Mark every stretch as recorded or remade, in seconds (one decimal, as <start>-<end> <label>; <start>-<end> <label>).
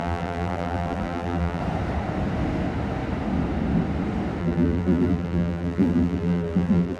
0.0-1.6 remade; 1.6-4.4 recorded; 4.4-7.0 remade